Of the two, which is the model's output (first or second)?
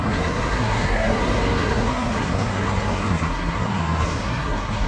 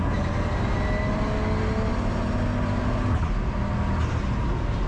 first